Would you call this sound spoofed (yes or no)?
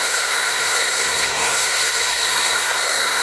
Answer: yes